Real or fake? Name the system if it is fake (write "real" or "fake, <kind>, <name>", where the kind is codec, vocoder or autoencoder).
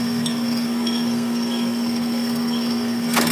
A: fake, codec, SNAC